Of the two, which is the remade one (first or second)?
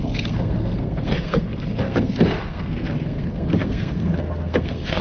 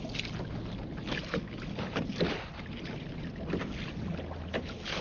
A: first